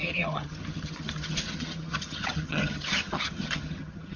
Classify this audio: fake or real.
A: fake